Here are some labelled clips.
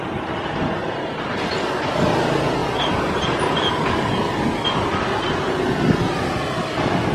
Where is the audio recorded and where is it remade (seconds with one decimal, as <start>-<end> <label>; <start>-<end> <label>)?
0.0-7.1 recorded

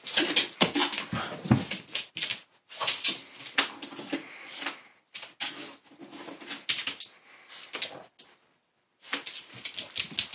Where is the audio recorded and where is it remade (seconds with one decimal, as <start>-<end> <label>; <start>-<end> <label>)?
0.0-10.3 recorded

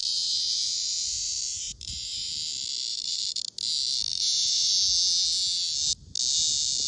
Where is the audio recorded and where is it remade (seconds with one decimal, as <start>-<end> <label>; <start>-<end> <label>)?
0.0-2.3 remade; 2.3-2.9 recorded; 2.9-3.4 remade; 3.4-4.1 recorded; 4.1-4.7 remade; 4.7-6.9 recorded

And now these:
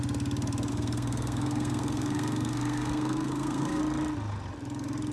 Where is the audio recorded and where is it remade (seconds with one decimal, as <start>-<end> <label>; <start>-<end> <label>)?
0.0-0.7 recorded; 0.7-3.8 remade; 3.8-5.1 recorded